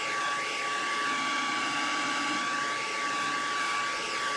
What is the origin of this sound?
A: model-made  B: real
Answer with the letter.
B